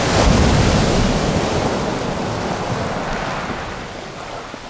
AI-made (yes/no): no